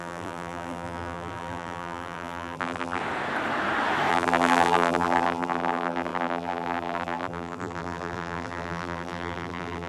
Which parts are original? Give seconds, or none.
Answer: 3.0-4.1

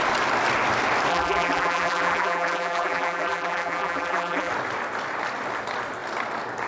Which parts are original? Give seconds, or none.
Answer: 0.0-1.1; 4.5-6.7

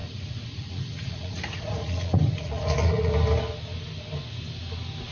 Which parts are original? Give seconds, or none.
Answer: 3.1-5.1